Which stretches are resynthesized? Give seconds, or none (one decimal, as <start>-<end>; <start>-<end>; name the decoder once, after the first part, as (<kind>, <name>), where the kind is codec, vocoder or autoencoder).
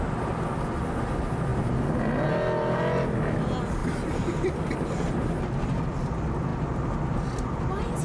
none